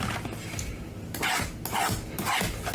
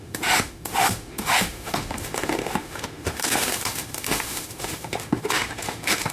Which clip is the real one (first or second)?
first